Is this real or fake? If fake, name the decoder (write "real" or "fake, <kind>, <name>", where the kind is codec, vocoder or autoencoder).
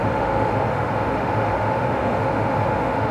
fake, autoencoder, DAC-VAE